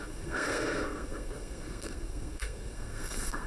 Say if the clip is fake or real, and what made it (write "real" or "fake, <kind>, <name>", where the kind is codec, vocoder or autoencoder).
fake, codec, SNAC